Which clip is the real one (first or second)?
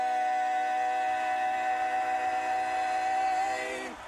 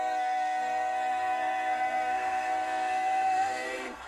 first